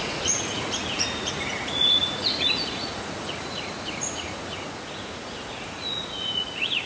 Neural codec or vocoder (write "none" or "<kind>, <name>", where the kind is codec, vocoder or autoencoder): vocoder, Vocos